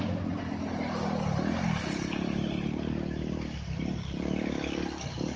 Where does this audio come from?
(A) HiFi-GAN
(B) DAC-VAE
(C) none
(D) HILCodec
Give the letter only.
C